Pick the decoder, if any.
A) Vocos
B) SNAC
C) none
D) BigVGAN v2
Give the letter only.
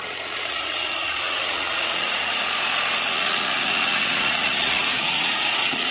A